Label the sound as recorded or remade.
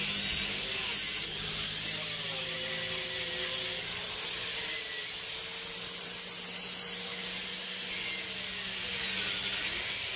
recorded